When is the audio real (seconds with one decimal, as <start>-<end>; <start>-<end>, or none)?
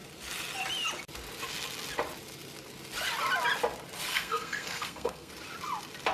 0.0-4.1; 5.3-6.1